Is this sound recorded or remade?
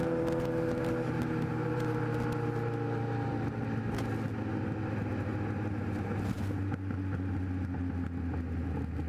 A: recorded